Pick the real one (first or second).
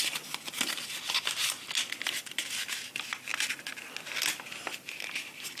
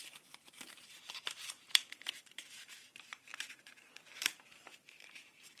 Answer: first